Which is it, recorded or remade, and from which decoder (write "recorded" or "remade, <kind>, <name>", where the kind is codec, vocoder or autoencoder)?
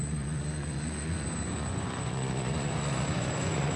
remade, vocoder, Vocos